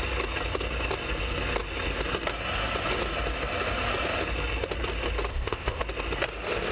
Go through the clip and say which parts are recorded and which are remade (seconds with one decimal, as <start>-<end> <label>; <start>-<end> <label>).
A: 0.0-5.3 recorded; 5.3-5.8 remade; 5.8-6.7 recorded